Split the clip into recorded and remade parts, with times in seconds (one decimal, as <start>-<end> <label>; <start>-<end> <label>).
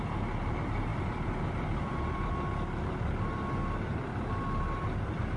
0.0-0.9 recorded; 0.9-2.3 remade; 2.3-5.4 recorded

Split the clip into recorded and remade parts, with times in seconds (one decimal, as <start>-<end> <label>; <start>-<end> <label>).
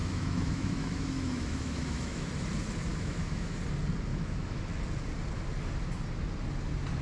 0.0-2.3 remade; 2.3-2.9 recorded; 2.9-3.6 remade; 3.6-4.1 recorded; 4.1-4.6 remade; 4.6-7.0 recorded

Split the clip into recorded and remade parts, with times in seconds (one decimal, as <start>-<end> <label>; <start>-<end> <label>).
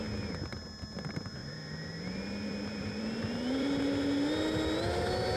0.0-1.4 recorded; 1.4-3.8 remade; 3.8-5.4 recorded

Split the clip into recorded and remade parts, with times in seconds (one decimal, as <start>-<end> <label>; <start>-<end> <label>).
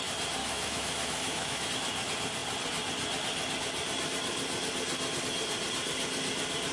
0.0-0.4 recorded; 0.4-1.7 remade; 1.7-6.7 recorded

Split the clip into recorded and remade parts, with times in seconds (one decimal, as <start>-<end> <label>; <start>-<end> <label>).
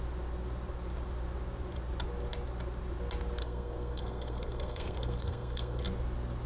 0.0-3.4 recorded; 3.4-5.8 remade; 5.8-6.5 recorded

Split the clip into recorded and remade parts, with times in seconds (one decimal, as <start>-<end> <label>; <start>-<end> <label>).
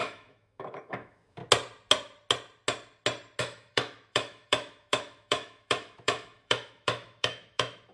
0.0-1.4 remade; 1.4-3.4 recorded; 3.4-7.9 remade